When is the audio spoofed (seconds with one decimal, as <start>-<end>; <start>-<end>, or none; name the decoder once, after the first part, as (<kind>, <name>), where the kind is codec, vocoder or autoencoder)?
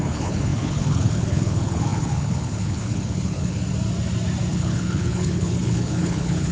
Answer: 0.0-3.6 (codec, HILCodec); 4.5-6.5